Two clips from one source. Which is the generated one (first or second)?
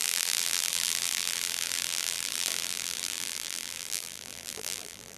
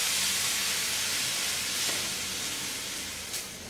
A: first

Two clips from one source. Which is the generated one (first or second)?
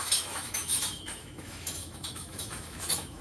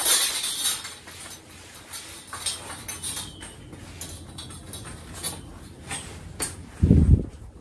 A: first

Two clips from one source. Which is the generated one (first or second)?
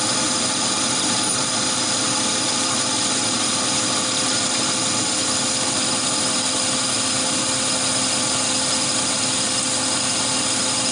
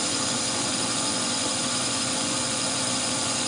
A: second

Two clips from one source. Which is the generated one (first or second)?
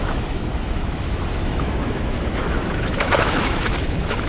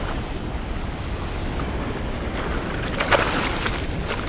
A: first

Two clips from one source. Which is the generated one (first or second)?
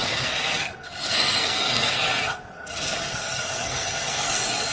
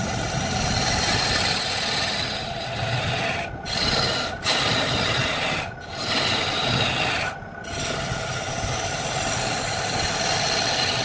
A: first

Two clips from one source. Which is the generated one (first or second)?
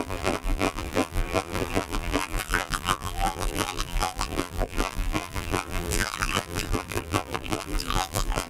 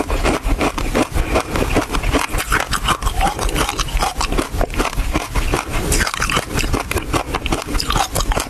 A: first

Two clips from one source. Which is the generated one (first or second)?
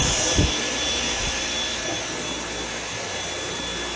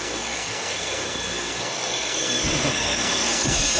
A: second